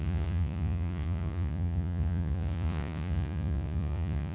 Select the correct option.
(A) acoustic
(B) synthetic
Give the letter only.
B